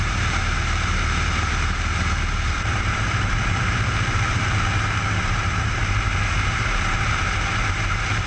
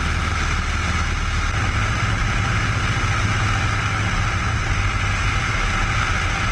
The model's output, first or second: first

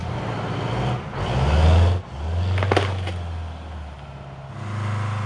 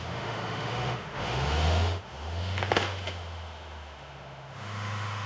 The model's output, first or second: second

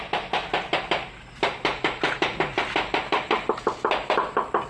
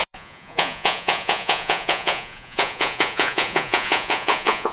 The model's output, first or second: second